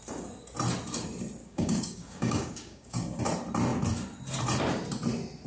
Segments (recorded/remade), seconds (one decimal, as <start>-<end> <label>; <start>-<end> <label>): 0.0-1.4 recorded; 1.4-3.2 remade; 3.2-5.5 recorded